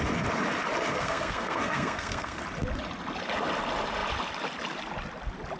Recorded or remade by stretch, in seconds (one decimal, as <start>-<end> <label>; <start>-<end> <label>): 0.0-0.9 recorded; 0.9-2.4 remade; 2.4-5.6 recorded

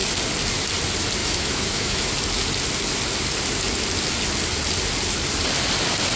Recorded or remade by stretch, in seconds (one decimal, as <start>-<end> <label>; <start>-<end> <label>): 0.0-1.2 recorded; 1.2-2.1 remade; 2.1-6.2 recorded

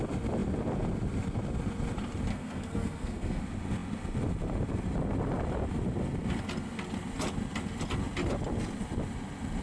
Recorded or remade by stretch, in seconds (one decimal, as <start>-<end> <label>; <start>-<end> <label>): 0.0-2.3 recorded; 2.3-3.4 remade; 3.4-9.6 recorded

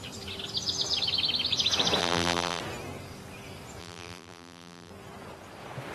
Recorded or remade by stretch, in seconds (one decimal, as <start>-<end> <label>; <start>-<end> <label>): 0.0-2.0 recorded; 2.0-2.6 remade; 2.6-3.8 recorded; 3.8-4.9 remade; 4.9-5.9 recorded